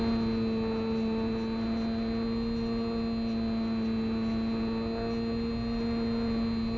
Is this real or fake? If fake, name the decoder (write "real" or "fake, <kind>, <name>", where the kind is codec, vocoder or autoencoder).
real